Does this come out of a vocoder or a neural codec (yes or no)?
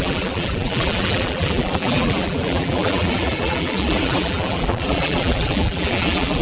yes